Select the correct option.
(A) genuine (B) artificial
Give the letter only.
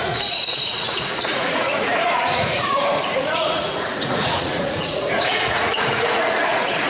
B